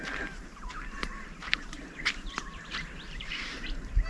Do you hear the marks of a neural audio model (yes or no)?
yes